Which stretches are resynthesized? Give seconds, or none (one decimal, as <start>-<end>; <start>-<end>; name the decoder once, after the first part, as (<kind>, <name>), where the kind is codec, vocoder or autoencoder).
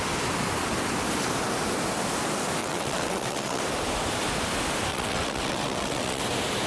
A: 2.6-3.6 (vocoder, WaveNeXt); 4.9-6.2